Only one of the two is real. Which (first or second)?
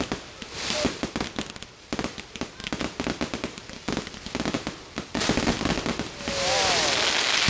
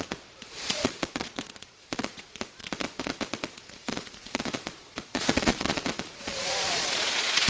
first